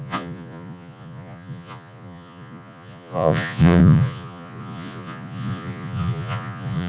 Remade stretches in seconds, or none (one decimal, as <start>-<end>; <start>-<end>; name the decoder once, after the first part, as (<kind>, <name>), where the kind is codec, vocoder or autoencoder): 0.0-6.9 (vocoder, Vocos)